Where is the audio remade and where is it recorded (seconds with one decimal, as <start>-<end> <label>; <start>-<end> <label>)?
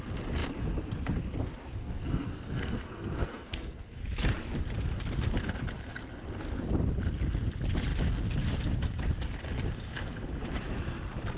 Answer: 0.0-1.8 recorded; 1.8-4.0 remade; 4.0-11.4 recorded